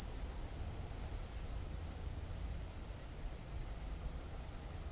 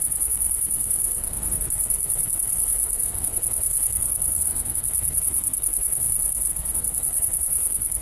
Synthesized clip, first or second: second